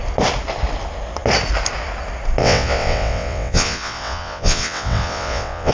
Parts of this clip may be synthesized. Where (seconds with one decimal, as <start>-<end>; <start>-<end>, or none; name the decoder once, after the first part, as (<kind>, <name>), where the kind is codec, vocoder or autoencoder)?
2.4-5.7 (vocoder, WaveNeXt)